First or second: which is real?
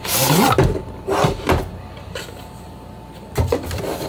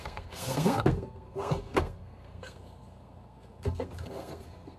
first